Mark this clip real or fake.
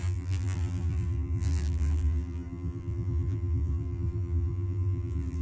fake